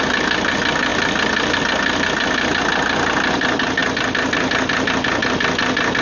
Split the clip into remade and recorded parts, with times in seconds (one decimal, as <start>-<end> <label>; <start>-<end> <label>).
0.0-6.0 recorded